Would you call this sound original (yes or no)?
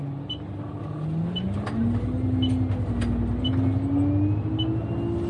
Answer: yes